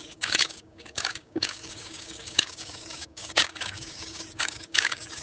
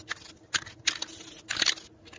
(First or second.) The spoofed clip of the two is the first